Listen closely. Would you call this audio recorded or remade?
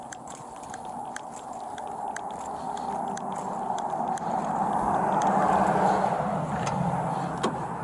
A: recorded